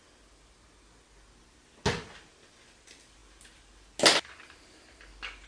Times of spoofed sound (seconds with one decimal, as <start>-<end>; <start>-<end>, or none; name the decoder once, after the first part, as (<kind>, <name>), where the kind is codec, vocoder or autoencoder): none